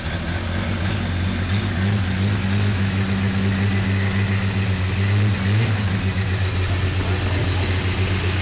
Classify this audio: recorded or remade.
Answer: recorded